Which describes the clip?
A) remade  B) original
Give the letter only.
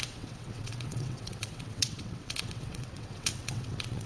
A